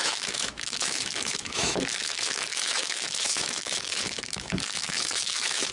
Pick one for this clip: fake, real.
fake